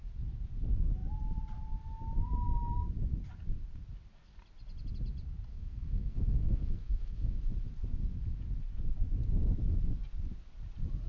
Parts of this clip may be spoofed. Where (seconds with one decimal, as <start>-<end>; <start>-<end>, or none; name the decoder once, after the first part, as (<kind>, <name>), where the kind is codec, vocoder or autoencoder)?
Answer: 5.5-7.3 (codec, SNAC)